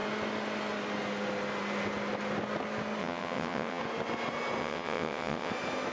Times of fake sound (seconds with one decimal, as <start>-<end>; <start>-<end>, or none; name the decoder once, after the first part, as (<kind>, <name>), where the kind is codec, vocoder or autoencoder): 3.0-3.8 (vocoder, WaveNeXt); 4.6-5.5